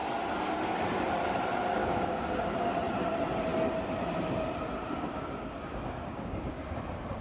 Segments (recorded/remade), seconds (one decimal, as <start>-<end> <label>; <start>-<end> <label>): 0.0-1.8 recorded; 1.8-2.8 remade; 2.8-4.9 recorded; 4.9-6.6 remade; 6.6-7.2 recorded